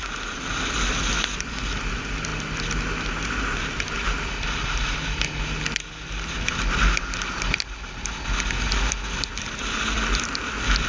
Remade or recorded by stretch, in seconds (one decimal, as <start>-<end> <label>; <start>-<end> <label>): 0.0-10.9 recorded